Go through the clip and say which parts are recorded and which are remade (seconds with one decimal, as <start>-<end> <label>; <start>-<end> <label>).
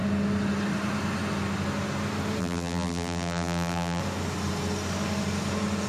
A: 0.0-2.4 recorded; 2.4-4.0 remade; 4.0-5.9 recorded